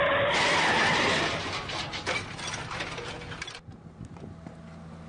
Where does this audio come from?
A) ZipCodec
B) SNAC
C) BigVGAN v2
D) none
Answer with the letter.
D